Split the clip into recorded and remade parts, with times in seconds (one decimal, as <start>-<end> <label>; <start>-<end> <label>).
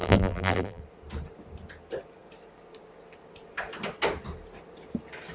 0.0-0.8 remade; 0.8-5.3 recorded